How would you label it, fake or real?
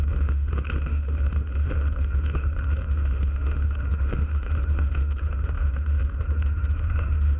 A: fake